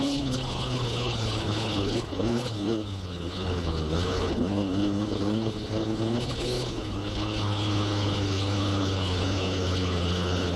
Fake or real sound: fake